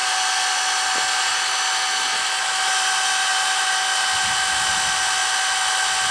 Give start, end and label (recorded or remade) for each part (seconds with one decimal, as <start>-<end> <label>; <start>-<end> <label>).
0.0-6.1 recorded